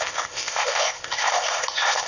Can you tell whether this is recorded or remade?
remade